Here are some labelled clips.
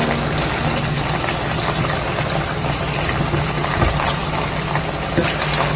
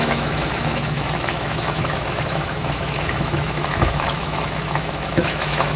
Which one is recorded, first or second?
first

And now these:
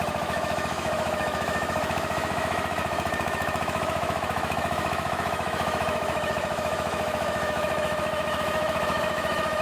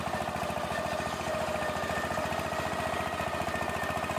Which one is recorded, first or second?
second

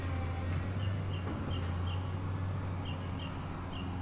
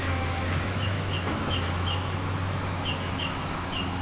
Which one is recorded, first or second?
first